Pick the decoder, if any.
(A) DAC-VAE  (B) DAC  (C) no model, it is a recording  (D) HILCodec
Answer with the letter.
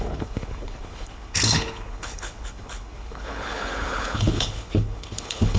D